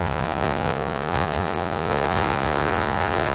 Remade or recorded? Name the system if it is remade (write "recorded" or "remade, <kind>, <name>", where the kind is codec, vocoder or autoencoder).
remade, vocoder, Vocos